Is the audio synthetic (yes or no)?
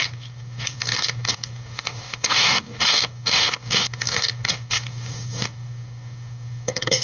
yes